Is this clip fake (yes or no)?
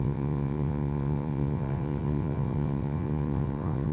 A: yes